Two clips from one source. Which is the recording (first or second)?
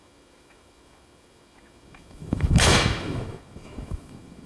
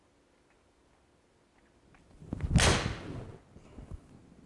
second